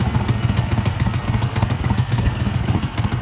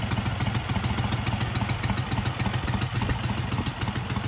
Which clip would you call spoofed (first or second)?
first